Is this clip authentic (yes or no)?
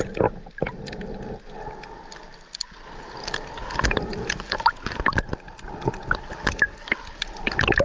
yes